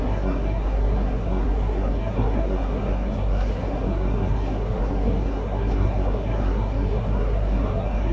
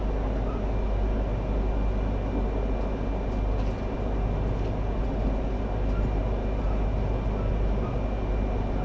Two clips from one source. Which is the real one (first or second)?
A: second